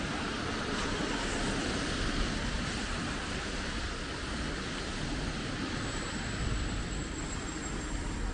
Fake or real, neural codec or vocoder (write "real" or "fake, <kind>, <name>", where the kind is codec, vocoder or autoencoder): real